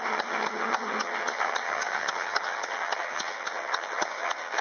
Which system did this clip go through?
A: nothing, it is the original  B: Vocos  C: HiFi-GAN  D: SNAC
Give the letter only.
C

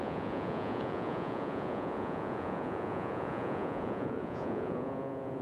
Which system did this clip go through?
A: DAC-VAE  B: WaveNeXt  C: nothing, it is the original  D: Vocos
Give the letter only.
D